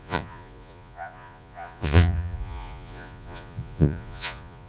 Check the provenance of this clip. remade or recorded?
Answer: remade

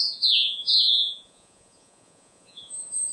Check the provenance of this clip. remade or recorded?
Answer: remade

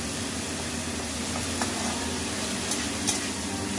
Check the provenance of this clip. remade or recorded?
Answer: recorded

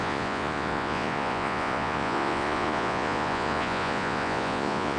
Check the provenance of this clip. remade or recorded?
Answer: remade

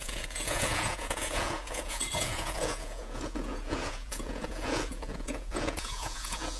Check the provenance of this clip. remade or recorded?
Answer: remade